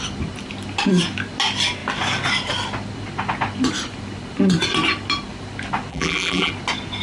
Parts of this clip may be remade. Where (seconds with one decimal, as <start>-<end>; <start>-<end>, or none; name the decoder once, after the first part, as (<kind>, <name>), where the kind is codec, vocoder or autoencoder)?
5.9-6.5 (vocoder, BigVGAN v2)